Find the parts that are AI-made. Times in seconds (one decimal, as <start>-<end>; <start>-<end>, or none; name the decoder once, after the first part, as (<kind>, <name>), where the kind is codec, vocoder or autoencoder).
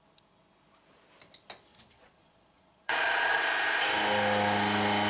1.7-3.4 (vocoder, Vocos)